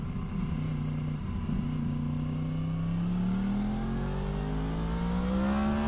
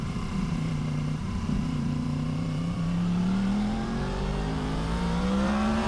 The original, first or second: first